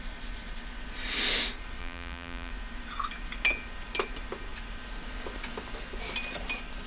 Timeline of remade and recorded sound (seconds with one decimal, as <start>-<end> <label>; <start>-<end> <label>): 0.0-1.8 recorded; 1.8-2.5 remade; 2.5-6.9 recorded